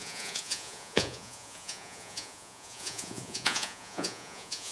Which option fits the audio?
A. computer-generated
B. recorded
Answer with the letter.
A